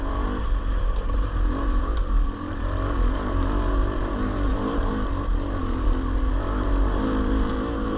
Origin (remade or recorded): remade